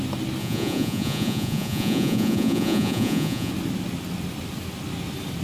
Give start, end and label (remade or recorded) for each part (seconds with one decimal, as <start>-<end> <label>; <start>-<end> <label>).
0.0-0.4 recorded; 0.4-3.5 remade; 3.5-5.4 recorded